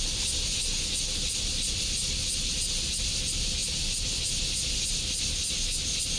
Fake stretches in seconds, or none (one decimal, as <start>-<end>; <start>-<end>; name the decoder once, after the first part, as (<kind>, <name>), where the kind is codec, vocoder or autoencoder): none

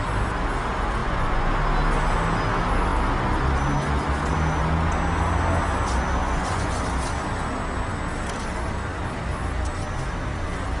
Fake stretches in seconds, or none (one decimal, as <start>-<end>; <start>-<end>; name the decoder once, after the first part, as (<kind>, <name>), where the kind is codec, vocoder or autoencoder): 1.0-1.5 (vocoder, Vocos); 6.2-6.8

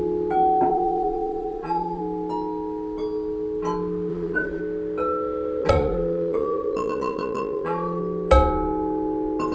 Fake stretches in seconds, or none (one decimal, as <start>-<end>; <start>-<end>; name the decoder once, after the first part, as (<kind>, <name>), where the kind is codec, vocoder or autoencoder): 0.7-2.0 (vocoder, Vocos); 4.1-4.6; 5.6-8.0

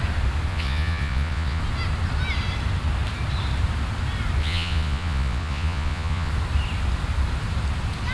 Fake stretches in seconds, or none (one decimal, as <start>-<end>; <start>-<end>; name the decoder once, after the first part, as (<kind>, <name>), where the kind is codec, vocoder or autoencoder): 0.5-1.6 (vocoder, Vocos); 4.4-6.3

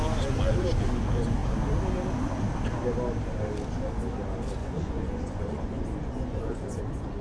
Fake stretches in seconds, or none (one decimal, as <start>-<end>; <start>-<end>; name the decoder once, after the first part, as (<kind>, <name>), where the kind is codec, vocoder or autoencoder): 4.6-6.8 (vocoder, Vocos)

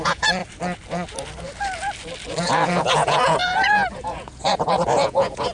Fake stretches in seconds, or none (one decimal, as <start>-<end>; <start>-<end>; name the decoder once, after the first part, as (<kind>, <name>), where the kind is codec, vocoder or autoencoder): 0.0-0.4 (vocoder, Vocos); 2.4-5.5

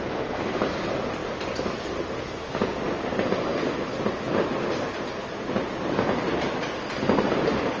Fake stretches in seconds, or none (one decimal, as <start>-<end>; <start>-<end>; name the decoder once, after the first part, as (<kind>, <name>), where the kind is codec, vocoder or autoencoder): none